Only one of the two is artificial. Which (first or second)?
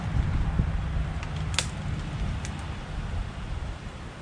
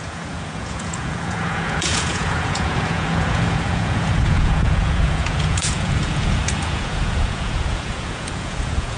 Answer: second